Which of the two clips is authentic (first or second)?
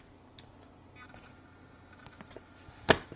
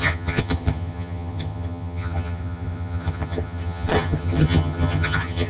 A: first